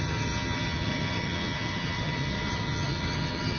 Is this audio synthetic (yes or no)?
yes